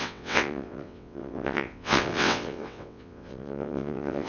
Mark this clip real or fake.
fake